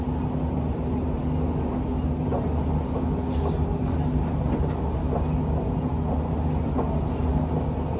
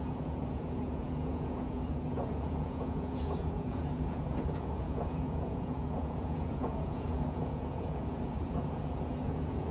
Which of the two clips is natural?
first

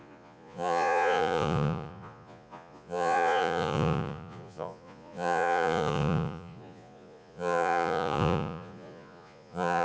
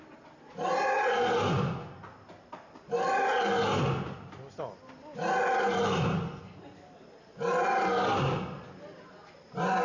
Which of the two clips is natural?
second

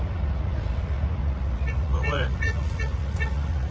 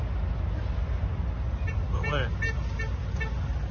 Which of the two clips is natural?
second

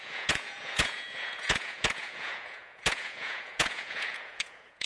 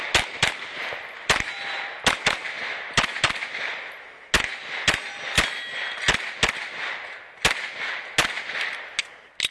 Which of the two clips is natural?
second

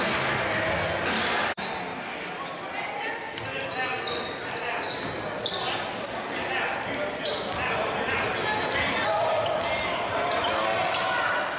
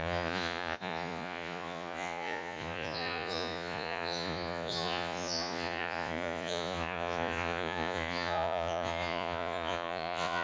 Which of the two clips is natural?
first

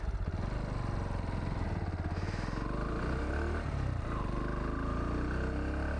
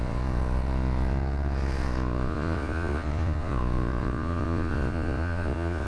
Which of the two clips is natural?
first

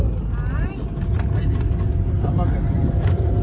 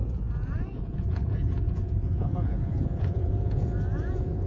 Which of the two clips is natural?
first